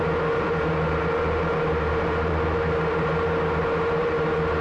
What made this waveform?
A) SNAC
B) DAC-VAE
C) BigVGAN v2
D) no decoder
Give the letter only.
C